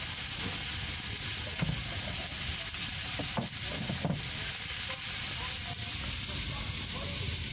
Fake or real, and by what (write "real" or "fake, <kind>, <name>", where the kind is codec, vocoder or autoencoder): real